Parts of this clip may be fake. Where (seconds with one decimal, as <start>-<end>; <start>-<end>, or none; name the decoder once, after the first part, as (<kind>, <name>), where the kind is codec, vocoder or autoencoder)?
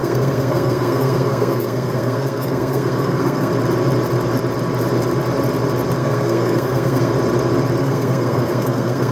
0.0-3.5 (codec, SNAC); 6.0-7.1; 7.8-9.1